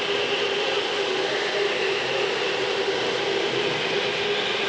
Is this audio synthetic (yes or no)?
no